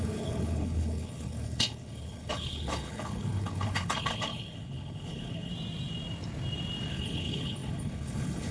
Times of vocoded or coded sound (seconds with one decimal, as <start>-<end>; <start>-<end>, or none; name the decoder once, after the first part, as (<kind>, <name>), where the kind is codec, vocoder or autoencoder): 0.0-5.5 (codec, HILCodec); 6.9-8.5